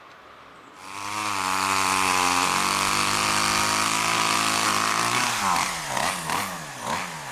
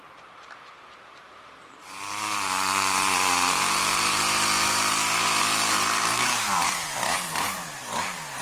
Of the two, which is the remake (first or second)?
second